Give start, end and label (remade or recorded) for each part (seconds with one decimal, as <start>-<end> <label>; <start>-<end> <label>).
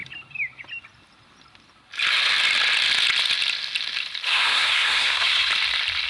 0.0-4.3 recorded; 4.3-5.5 remade; 5.5-6.1 recorded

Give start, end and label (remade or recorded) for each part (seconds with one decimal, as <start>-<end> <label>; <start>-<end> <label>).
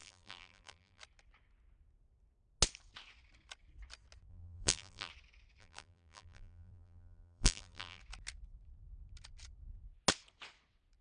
0.0-1.0 remade; 1.0-4.3 recorded; 4.3-5.1 remade; 5.1-5.6 recorded; 5.6-8.0 remade; 8.0-11.0 recorded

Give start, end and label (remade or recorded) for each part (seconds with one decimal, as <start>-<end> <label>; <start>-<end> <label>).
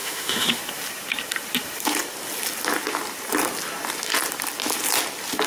0.0-0.6 remade; 0.6-5.5 recorded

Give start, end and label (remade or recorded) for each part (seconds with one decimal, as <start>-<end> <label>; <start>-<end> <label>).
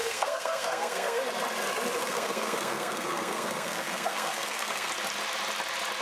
0.0-1.3 remade; 1.3-2.0 recorded; 2.0-4.9 remade; 4.9-6.0 recorded